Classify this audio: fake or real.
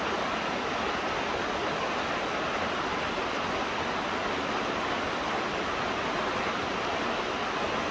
real